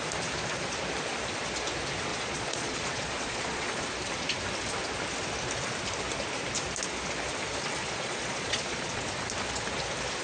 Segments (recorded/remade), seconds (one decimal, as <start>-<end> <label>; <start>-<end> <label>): 0.0-2.1 recorded; 2.1-3.8 remade; 3.8-7.8 recorded; 7.8-9.0 remade; 9.0-10.2 recorded